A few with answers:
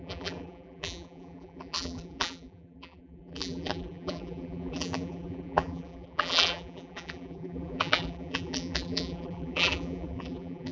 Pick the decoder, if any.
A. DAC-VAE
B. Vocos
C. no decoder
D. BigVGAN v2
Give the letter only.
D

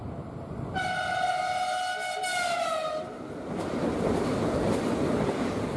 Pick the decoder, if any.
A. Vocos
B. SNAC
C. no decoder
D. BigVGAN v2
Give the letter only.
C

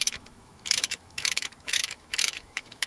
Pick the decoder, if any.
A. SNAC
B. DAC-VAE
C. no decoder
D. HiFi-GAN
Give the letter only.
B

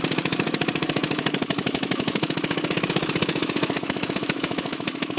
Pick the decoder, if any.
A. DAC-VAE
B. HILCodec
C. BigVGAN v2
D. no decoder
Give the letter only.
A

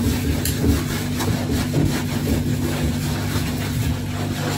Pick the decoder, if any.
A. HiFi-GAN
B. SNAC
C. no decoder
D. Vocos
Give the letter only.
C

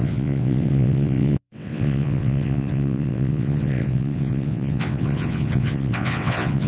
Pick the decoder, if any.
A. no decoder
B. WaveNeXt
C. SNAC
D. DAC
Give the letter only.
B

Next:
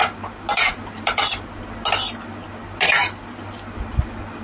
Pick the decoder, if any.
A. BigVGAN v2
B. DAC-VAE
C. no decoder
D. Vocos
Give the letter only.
C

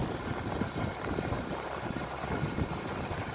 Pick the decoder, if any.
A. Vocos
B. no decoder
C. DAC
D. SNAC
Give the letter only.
B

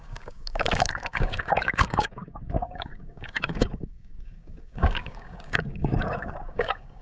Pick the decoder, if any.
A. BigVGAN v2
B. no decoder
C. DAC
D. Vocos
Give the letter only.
C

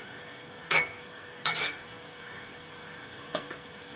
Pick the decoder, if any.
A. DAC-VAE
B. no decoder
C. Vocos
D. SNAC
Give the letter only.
D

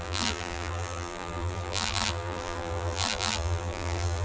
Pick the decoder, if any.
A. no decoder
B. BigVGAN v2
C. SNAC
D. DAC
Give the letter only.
B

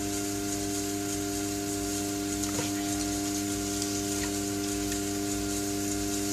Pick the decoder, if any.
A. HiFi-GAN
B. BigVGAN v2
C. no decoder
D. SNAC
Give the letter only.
C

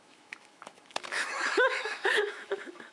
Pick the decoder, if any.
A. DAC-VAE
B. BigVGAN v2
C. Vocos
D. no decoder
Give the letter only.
A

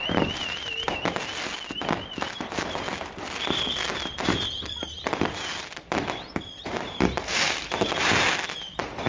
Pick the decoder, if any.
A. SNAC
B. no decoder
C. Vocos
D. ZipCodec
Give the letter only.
B